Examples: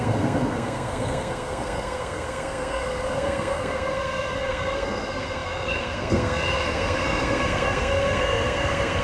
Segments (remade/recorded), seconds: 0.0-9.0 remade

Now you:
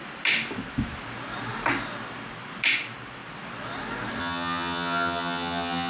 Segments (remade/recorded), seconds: 0.0-4.2 recorded; 4.2-5.9 remade

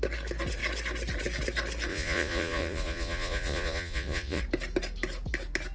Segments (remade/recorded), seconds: 0.0-1.9 recorded; 1.9-4.4 remade; 4.4-5.7 recorded

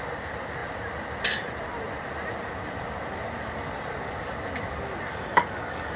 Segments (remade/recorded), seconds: 0.0-5.1 recorded; 5.1-6.0 remade